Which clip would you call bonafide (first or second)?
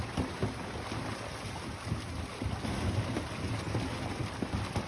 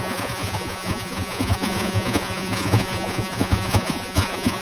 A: first